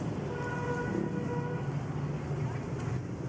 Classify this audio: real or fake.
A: real